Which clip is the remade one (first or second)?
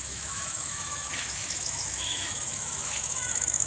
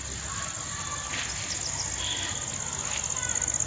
first